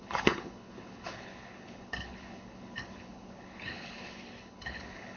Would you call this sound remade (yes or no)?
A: yes